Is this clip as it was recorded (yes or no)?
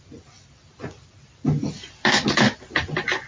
no